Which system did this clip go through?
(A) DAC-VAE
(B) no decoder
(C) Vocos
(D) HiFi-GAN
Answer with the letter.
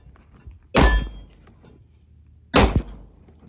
B